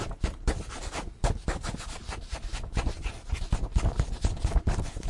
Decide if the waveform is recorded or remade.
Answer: recorded